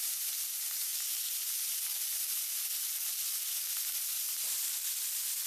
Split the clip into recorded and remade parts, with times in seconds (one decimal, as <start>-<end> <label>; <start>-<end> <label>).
0.0-5.5 recorded